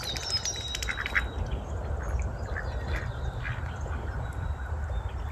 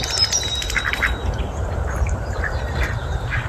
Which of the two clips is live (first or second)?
first